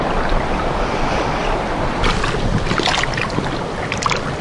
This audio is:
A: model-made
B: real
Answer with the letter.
B